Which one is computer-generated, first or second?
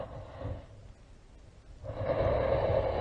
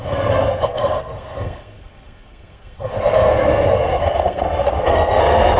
second